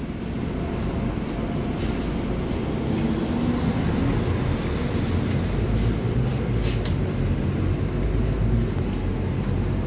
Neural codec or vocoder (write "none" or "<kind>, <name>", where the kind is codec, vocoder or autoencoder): none